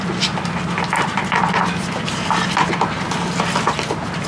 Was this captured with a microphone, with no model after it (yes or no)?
yes